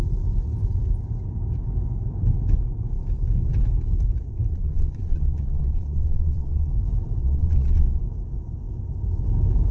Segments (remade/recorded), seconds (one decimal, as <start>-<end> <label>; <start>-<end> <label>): 0.0-4.5 recorded; 4.5-6.7 remade; 6.7-7.2 recorded; 7.2-8.0 remade; 8.0-9.7 recorded